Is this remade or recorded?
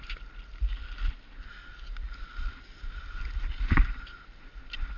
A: recorded